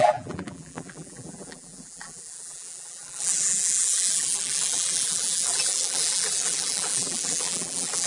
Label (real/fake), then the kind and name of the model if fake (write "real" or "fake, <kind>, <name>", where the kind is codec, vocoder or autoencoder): fake, vocoder, BigVGAN v2